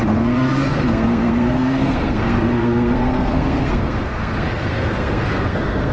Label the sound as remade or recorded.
remade